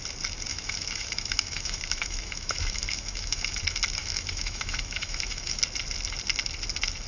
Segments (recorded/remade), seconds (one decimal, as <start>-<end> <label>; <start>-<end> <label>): 0.0-0.5 recorded; 0.5-3.6 remade; 3.6-4.0 recorded; 4.0-5.6 remade; 5.6-7.1 recorded